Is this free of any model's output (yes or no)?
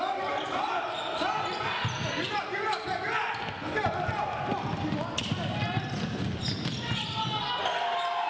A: yes